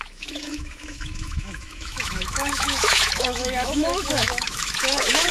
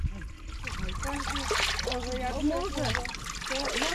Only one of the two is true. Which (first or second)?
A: second